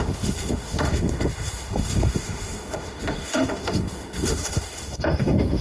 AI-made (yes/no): yes